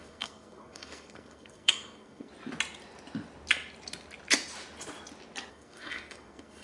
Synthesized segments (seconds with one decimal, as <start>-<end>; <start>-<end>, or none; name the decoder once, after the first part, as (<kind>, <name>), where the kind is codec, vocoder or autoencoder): 0.0-2.3 (codec, SNAC); 5.5-6.6